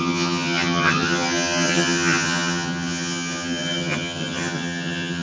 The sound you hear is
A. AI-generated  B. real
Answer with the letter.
A